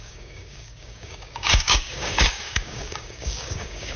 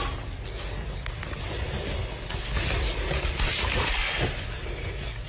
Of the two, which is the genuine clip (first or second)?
second